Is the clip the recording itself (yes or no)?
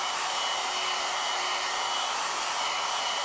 yes